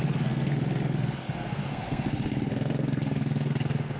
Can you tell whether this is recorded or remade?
remade